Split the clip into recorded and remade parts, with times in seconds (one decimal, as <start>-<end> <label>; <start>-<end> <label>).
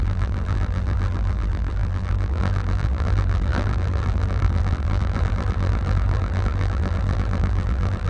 0.0-8.1 remade